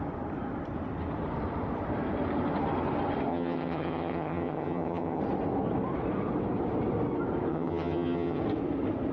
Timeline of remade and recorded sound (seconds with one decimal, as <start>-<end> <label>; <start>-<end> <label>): 0.0-3.3 recorded; 3.3-5.2 remade; 5.2-7.5 recorded; 7.5-8.4 remade; 8.4-9.1 recorded